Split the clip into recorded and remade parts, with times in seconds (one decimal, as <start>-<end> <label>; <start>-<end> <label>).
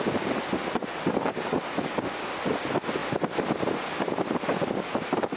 0.0-5.4 recorded